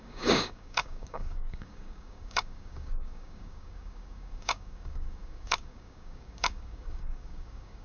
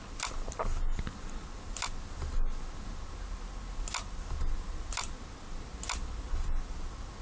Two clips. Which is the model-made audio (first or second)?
first